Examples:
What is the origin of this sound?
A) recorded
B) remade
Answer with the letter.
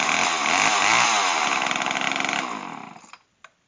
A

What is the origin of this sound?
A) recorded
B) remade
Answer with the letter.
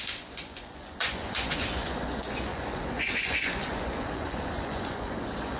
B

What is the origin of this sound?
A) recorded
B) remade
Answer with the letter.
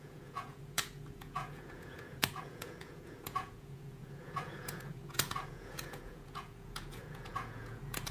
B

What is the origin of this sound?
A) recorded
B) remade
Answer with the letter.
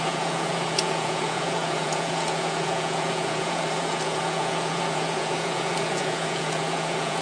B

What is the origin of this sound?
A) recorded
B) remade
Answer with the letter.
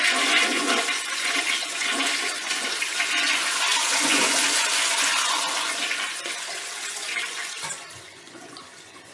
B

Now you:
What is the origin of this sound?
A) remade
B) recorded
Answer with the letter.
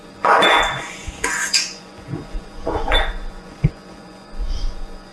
A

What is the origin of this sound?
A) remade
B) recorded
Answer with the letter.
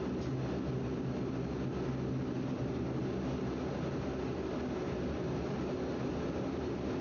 B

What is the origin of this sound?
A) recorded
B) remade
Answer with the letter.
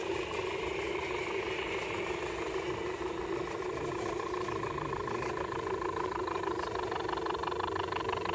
A